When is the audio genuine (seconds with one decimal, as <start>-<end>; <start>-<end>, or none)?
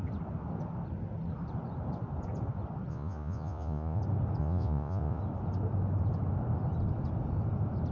0.0-2.9; 4.0-4.4; 5.2-7.9